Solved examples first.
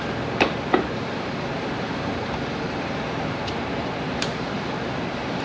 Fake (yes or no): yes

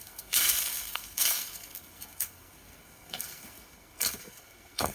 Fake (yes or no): yes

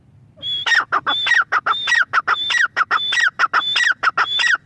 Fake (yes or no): no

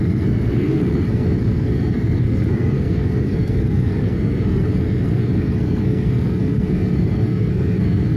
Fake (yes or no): yes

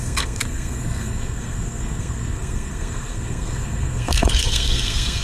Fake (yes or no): yes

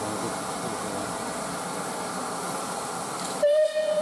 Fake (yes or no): no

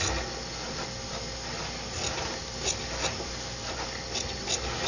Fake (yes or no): no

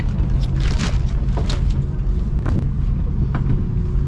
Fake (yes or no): no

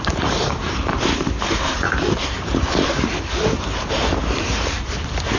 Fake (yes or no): yes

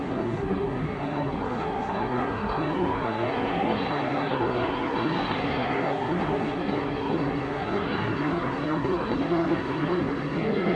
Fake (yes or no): yes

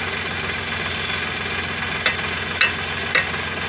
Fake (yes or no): no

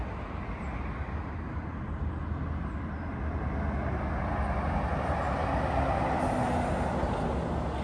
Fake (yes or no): no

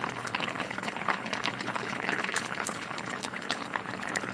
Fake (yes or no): yes